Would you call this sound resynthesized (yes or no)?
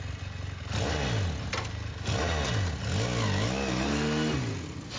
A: no